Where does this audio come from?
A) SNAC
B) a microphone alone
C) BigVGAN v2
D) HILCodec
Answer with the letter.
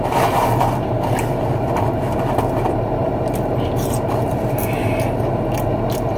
B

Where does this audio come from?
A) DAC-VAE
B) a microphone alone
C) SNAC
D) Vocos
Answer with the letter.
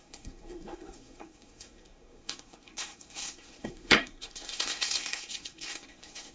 C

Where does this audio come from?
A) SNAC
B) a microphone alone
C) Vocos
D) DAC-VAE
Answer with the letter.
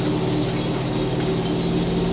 B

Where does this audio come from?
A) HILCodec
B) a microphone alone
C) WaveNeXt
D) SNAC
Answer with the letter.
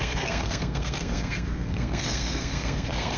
D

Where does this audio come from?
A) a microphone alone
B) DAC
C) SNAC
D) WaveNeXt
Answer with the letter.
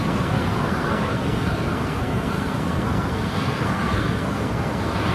C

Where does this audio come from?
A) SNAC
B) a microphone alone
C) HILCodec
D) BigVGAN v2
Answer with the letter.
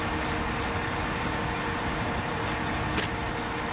B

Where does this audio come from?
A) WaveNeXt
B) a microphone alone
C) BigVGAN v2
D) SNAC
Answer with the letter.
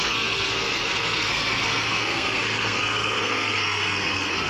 D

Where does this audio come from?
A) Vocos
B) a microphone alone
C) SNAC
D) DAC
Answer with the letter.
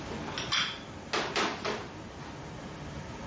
B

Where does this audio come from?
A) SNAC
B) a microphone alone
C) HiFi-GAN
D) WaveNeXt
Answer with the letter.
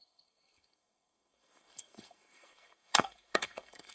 A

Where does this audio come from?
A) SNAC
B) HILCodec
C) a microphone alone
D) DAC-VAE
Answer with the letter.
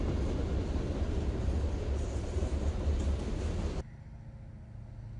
C